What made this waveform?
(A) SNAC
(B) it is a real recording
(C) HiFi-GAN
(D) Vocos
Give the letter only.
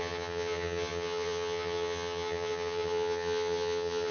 C